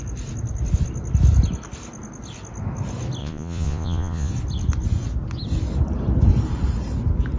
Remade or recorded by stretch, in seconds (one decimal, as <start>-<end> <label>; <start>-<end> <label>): 0.0-3.2 recorded; 3.2-4.3 remade; 4.3-7.4 recorded